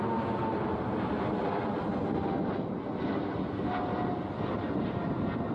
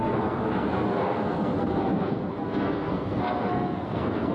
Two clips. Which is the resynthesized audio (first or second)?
second